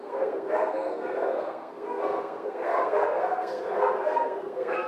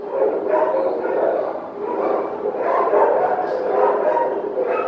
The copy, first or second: first